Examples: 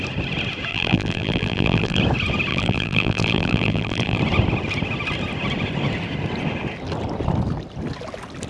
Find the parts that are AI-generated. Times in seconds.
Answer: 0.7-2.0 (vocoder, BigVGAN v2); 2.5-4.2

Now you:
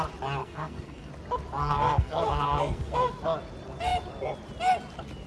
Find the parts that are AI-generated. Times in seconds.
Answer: 0.4-1.1 (codec, SNAC); 1.6-3.1

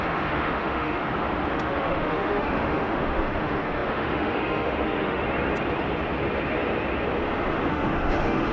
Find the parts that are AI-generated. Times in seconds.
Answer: 0.0-1.0 (autoencoder, DAC-VAE); 1.5-5.2; 7.7-8.5